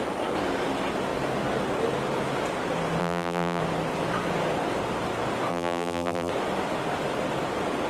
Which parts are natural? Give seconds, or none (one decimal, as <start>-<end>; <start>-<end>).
0.0-3.0; 3.6-5.5; 6.3-7.9